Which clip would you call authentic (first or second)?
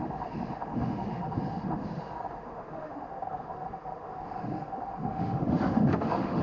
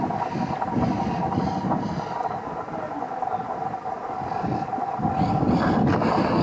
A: second